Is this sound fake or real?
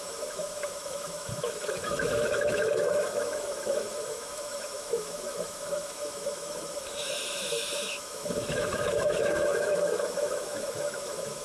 fake